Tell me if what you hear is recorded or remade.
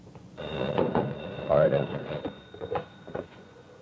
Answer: remade